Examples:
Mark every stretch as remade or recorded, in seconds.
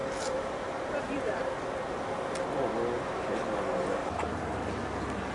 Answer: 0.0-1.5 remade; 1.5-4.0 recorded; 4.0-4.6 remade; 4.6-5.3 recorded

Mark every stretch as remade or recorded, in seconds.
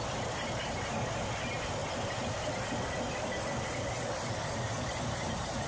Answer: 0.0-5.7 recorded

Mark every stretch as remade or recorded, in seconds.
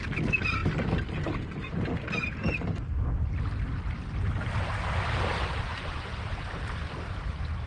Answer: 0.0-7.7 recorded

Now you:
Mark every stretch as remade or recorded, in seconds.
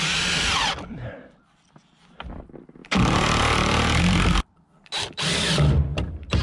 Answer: 0.0-6.4 remade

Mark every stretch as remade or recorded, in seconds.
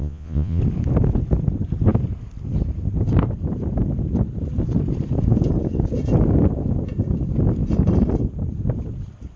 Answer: 0.0-0.6 remade; 0.6-9.4 recorded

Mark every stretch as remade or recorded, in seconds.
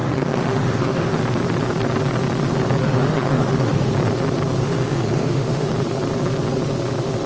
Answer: 0.0-1.1 remade; 1.1-2.8 recorded; 2.8-3.9 remade; 3.9-4.6 recorded; 4.6-5.7 remade; 5.7-7.3 recorded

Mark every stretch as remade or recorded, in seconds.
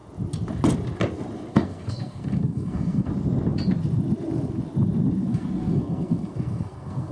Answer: 0.0-1.5 recorded; 1.5-3.1 remade; 3.1-5.2 recorded; 5.2-7.1 remade